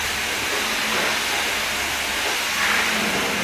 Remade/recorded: recorded